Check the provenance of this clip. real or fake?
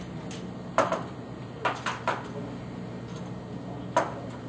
real